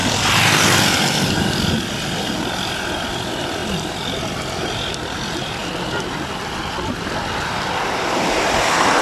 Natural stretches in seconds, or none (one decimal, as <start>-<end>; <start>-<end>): 0.0-3.0; 3.6-4.9; 5.6-6.4